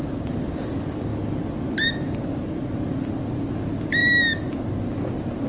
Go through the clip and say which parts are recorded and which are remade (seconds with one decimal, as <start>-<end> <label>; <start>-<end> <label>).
0.0-5.5 recorded

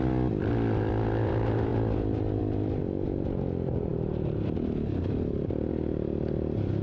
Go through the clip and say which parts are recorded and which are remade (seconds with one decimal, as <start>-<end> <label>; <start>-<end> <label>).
0.0-6.8 recorded

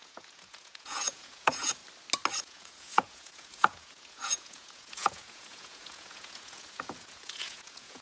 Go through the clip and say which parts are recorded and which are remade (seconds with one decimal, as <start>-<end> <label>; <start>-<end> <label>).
0.0-1.8 remade; 1.8-2.4 recorded; 2.4-8.0 remade

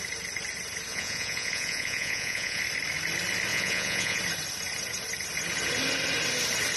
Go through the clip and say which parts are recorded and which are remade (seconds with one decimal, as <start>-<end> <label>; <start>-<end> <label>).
0.0-0.9 recorded; 0.9-2.6 remade; 2.6-3.5 recorded; 3.5-4.2 remade; 4.2-6.8 recorded